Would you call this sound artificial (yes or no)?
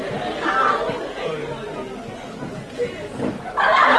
no